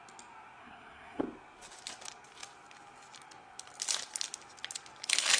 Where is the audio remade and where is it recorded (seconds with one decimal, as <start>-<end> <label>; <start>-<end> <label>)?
0.0-0.6 recorded; 0.6-1.2 remade; 1.2-5.4 recorded